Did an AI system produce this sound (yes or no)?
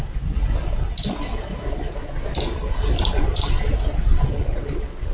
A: no